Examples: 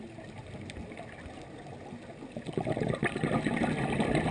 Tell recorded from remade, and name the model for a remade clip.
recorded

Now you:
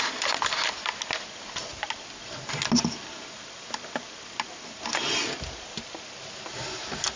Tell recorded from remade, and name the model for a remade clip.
recorded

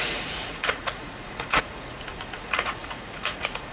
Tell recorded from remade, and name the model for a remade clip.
remade, vocoder, Vocos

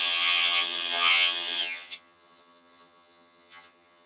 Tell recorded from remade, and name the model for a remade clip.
remade, vocoder, HiFi-GAN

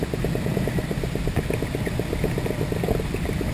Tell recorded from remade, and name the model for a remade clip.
recorded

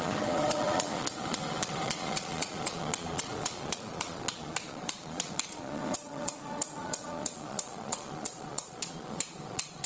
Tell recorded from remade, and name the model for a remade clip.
remade, vocoder, Vocos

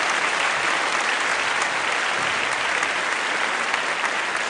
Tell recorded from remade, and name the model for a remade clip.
recorded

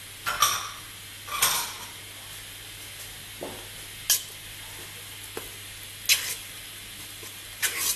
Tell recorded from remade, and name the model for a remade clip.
recorded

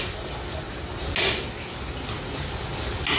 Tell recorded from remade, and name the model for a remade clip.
recorded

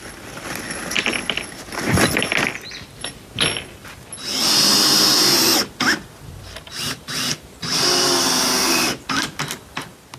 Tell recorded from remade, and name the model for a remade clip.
recorded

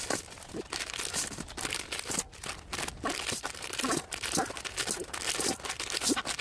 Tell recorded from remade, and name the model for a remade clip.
recorded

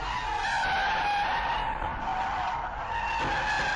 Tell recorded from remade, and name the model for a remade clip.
recorded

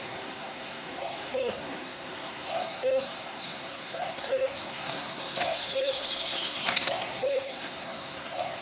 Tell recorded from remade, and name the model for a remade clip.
remade, codec, SNAC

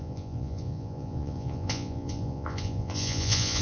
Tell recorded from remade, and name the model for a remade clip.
remade, vocoder, Vocos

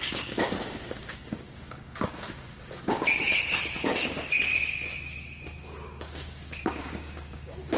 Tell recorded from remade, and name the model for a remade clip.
remade, codec, DAC